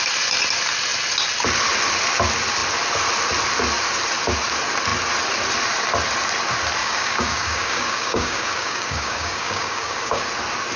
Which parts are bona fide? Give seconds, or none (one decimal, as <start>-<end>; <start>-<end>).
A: 0.0-6.8; 10.3-10.8

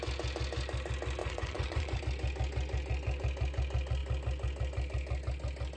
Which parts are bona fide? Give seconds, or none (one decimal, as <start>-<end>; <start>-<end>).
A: 0.0-1.2; 2.0-5.8

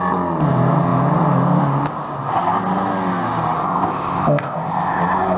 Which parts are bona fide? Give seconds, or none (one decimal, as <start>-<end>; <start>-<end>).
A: 0.0-3.6; 5.0-5.4